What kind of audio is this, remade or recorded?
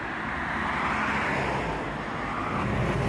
recorded